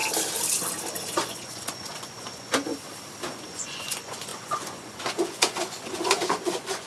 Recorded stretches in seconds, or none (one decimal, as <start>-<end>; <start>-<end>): 0.0-1.0; 2.7-3.3